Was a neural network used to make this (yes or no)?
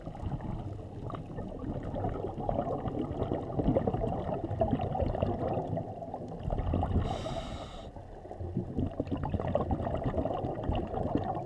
no